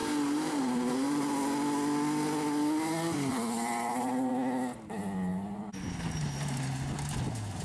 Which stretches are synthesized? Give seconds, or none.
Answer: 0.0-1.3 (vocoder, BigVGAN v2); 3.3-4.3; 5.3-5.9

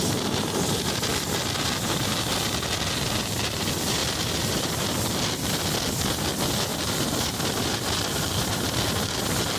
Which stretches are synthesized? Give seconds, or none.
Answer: 4.0-4.8 (vocoder, BigVGAN v2); 6.7-9.2

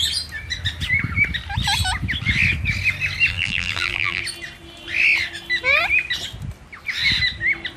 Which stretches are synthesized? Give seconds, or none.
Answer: 3.3-4.2 (vocoder, BigVGAN v2)

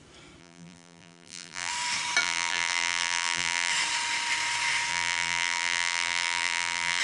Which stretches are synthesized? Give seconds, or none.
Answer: 0.4-1.7 (vocoder, BigVGAN v2); 2.2-3.7; 4.9-7.0

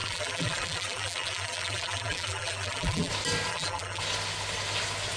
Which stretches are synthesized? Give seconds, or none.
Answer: 0.0-3.1 (vocoder, BigVGAN v2); 3.5-4.0